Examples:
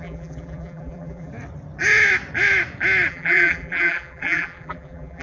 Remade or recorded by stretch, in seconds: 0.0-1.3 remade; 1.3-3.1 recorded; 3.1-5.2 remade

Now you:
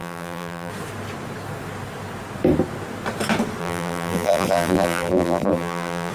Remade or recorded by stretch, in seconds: 0.0-0.7 remade; 0.7-3.6 recorded; 3.6-6.1 remade

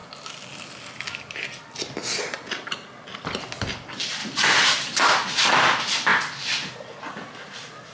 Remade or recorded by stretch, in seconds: 0.0-4.2 recorded; 4.2-5.0 remade; 5.0-6.1 recorded; 6.1-6.7 remade; 6.7-7.9 recorded

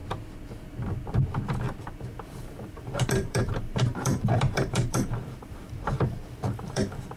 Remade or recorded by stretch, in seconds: 0.0-1.8 recorded; 1.8-7.2 remade

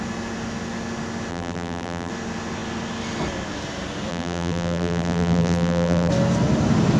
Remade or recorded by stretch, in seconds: 0.0-1.3 recorded; 1.3-2.1 remade; 2.1-4.1 recorded; 4.1-6.1 remade; 6.1-7.0 recorded

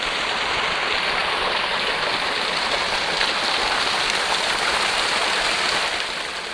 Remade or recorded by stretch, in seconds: 0.0-6.5 recorded

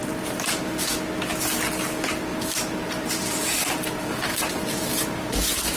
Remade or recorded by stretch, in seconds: 0.0-0.9 remade; 0.9-2.3 recorded; 2.3-5.8 remade

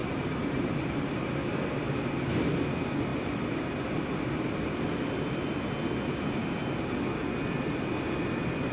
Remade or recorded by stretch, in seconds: 0.0-0.8 remade; 0.8-3.1 recorded; 3.1-3.9 remade; 3.9-8.7 recorded